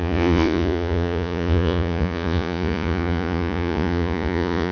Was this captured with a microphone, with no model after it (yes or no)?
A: no